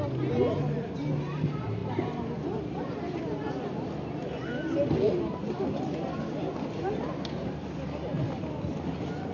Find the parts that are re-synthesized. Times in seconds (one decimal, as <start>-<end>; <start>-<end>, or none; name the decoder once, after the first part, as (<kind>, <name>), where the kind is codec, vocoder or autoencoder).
none